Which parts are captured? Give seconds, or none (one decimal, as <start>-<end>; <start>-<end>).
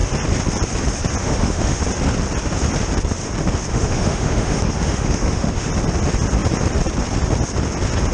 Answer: 0.0-1.2; 1.8-3.7; 5.7-8.1